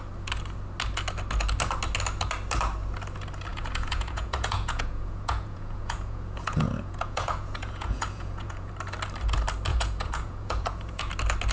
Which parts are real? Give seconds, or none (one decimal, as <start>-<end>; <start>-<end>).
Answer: 0.0-3.5; 8.7-9.7; 11.1-11.5